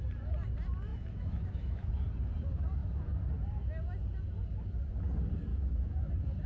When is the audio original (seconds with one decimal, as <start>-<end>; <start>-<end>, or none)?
0.0-0.9; 1.9-5.5; 6.1-6.5